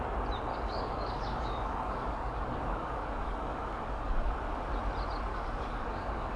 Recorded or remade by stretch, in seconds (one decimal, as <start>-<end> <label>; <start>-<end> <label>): 0.0-0.5 recorded; 0.5-4.3 remade; 4.3-5.3 recorded; 5.3-6.4 remade